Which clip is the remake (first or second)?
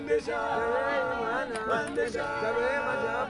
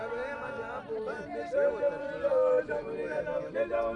second